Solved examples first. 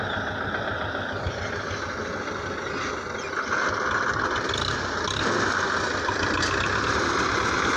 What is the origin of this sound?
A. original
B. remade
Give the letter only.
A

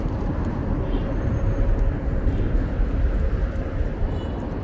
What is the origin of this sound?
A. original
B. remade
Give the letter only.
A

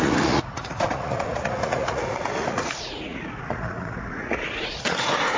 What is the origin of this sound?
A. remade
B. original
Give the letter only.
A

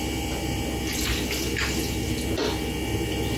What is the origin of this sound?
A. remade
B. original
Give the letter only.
B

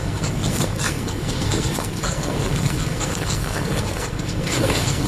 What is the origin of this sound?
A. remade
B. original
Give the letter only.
A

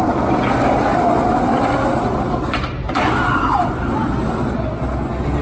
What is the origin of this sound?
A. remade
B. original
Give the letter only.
B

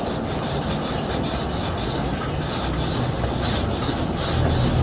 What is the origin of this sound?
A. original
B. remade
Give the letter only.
A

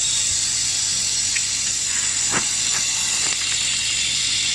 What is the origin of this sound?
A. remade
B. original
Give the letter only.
A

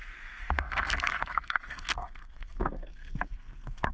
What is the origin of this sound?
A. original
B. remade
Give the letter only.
B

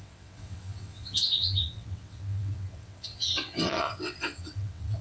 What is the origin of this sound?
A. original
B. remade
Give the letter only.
B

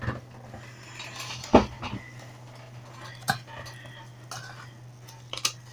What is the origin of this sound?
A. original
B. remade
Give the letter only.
A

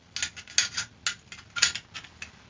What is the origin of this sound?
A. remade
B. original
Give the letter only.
B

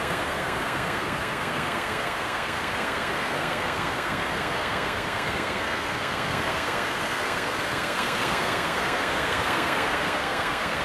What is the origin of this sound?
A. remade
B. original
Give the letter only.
A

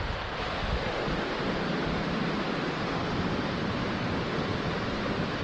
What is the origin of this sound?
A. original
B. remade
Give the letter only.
A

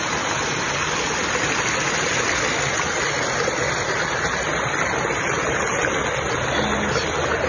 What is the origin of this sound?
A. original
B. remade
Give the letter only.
A